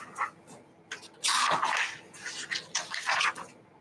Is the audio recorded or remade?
recorded